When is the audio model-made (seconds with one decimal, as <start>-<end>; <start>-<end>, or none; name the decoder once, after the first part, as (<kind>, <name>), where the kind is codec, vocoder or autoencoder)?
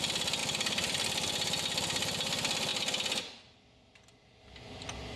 none